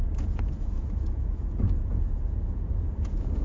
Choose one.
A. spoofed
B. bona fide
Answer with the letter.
A